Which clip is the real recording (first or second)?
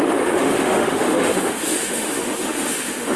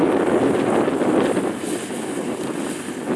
second